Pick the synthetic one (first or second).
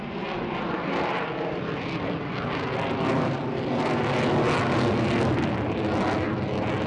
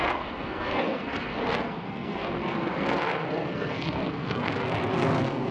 second